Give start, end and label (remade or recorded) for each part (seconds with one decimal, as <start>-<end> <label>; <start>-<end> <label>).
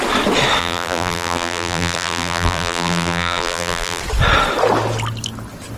0.0-0.6 recorded; 0.6-4.0 remade; 4.0-5.8 recorded